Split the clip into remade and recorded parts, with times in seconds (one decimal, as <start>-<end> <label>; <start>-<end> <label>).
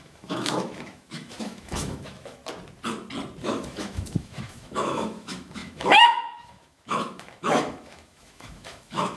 0.0-2.4 remade; 2.4-3.4 recorded; 3.4-9.2 remade